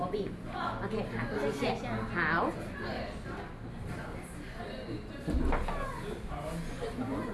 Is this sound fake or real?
real